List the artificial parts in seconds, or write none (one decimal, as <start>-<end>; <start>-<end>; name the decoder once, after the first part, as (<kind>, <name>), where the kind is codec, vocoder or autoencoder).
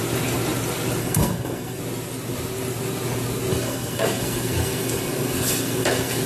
1.0-1.8 (codec, SNAC); 3.5-6.3